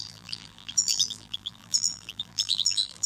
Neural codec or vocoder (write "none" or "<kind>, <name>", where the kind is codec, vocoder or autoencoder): vocoder, BigVGAN v2